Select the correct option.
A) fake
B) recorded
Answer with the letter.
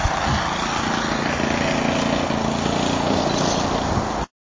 B